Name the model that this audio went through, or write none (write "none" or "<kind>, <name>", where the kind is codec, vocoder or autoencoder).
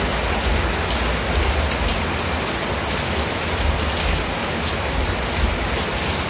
none